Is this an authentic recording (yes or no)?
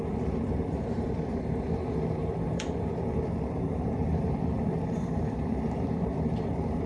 no